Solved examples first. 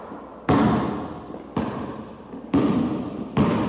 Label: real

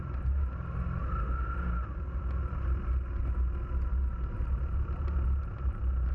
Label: real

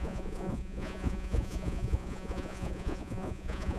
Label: fake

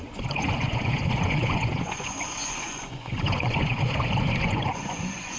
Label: fake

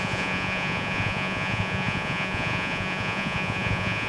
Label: fake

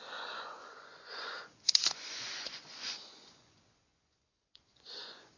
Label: fake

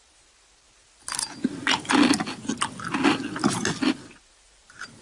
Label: real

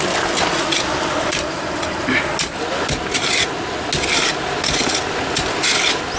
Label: real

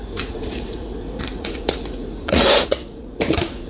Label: fake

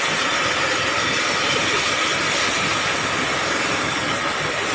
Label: real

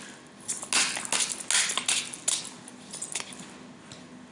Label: real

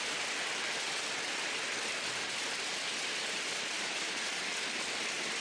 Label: real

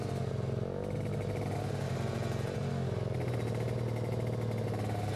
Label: real